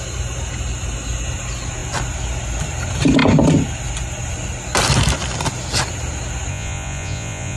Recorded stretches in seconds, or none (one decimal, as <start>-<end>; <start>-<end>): 0.0-6.5